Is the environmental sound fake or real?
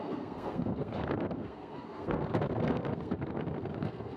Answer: fake